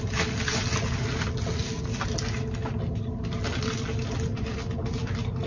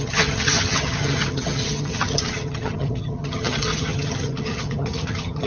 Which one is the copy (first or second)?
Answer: second